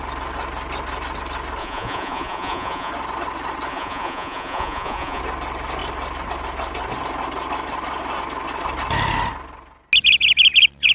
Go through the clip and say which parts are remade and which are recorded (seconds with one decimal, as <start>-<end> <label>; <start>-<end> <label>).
0.0-1.6 recorded; 1.6-2.9 remade; 2.9-3.7 recorded; 3.7-5.2 remade; 5.2-10.9 recorded